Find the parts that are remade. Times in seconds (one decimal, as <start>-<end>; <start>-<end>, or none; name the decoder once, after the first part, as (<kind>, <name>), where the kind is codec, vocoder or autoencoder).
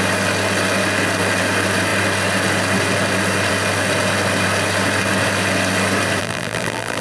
6.2-7.0 (vocoder, BigVGAN v2)